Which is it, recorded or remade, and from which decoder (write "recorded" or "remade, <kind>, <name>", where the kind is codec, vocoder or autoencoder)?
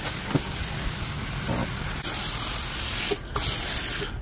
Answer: recorded